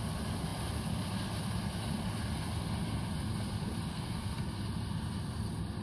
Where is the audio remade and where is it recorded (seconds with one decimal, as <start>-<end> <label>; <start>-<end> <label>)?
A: 0.0-3.9 recorded; 3.9-4.4 remade; 4.4-5.8 recorded